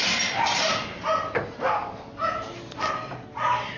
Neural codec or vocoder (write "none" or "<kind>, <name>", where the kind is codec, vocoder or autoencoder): none